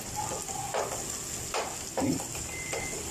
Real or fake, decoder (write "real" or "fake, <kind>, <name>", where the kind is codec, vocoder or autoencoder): real